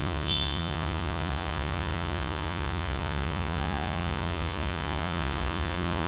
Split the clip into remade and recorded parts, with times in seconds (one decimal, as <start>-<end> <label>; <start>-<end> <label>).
0.0-6.1 remade